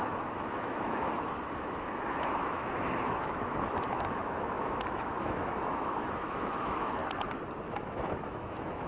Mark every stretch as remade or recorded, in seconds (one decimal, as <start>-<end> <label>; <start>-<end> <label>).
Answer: 0.0-7.0 remade; 7.0-7.7 recorded; 7.7-8.9 remade